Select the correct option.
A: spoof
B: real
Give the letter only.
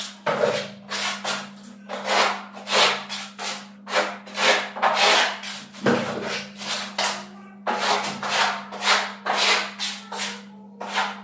B